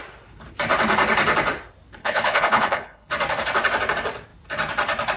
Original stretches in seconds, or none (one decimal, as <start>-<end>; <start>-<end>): 0.0-2.0; 3.1-5.2